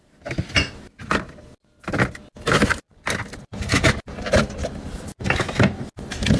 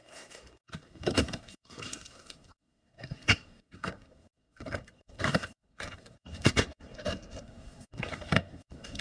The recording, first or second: first